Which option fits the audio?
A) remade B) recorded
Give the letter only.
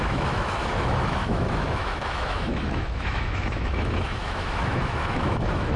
A